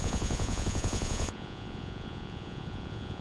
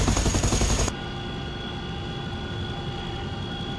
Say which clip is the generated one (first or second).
first